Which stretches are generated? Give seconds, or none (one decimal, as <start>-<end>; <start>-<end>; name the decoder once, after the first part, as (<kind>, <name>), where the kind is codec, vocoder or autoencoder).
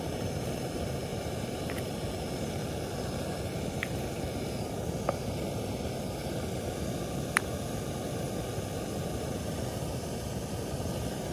1.1-1.6 (vocoder, BigVGAN v2)